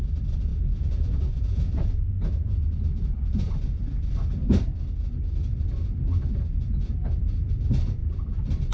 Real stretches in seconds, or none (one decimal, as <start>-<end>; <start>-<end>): 0.0-0.5; 3.5-8.7